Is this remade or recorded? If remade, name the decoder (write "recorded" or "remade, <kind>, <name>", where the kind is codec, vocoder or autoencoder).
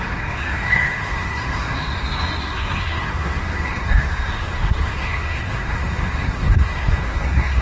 remade, codec, SNAC